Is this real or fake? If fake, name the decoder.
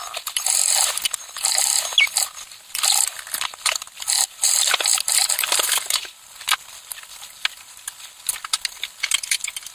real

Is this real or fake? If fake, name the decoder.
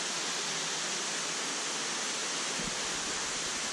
real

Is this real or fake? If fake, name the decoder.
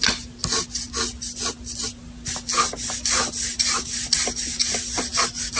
real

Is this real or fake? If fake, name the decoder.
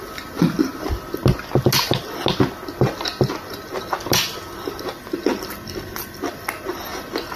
real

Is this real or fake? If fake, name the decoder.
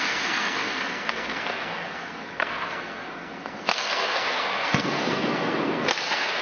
fake, codec, SNAC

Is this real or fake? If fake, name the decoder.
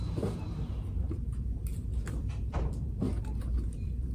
fake, vocoder, BigVGAN v2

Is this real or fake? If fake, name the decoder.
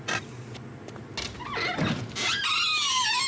real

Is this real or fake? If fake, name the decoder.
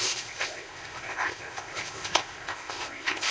fake, codec, ZipCodec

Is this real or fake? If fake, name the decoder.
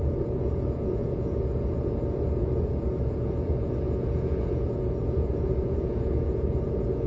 fake, vocoder, Vocos